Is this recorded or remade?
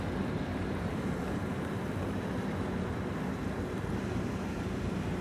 remade